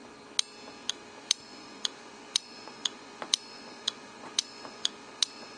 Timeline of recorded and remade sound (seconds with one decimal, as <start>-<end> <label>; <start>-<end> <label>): 0.0-1.2 recorded; 1.2-5.6 remade